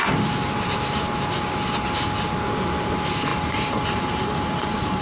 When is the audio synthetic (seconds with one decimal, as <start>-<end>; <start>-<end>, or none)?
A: 3.3-5.0